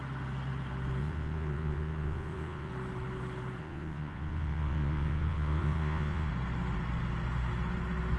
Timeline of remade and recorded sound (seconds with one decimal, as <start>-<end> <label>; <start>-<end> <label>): 0.0-1.0 recorded; 1.0-2.7 remade; 2.7-3.6 recorded; 3.6-6.3 remade; 6.3-8.2 recorded